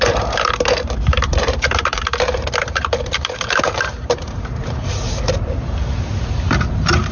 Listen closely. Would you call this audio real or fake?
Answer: fake